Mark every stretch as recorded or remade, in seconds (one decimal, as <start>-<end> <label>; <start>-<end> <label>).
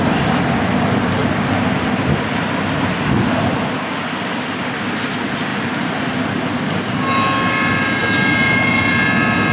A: 0.0-9.5 recorded